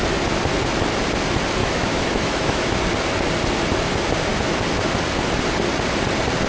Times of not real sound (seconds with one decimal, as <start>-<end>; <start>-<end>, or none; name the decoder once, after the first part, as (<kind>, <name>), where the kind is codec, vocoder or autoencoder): 1.6-2.8 (autoencoder, DAC-VAE)